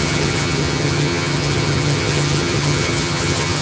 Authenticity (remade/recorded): remade